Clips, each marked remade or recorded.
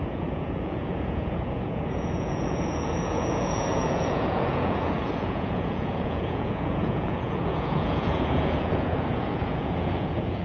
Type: remade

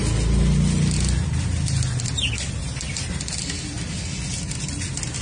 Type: recorded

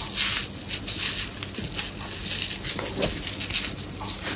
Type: recorded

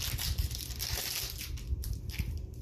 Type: recorded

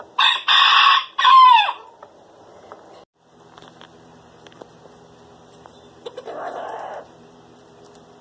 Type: remade